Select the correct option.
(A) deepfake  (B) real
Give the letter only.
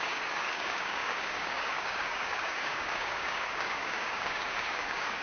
A